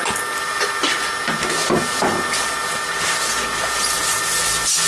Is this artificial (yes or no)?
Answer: no